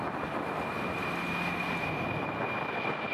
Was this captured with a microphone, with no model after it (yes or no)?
yes